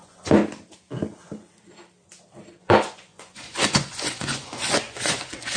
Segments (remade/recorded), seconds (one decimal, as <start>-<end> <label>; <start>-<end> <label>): 0.0-0.4 remade; 0.4-2.6 recorded; 2.6-5.6 remade